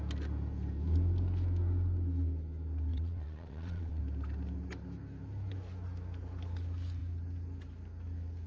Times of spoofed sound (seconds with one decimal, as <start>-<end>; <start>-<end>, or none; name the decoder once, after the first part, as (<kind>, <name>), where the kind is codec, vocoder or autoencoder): 2.9-4.0 (vocoder, WaveNeXt)